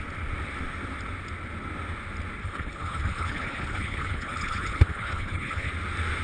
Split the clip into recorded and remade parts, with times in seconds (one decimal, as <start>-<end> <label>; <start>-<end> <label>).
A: 0.0-2.4 recorded; 2.4-5.7 remade; 5.7-6.2 recorded